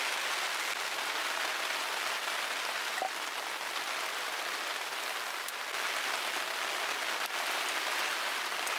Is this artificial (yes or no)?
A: no